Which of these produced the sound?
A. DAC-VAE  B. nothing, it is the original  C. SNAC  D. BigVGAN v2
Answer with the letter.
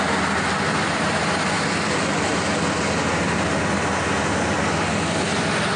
B